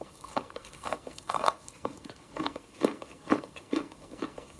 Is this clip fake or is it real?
fake